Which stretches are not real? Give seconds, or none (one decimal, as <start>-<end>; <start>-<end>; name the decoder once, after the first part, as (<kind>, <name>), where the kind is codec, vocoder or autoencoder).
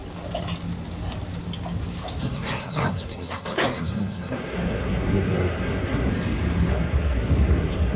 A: 2.2-6.1 (codec, SNAC); 6.7-8.0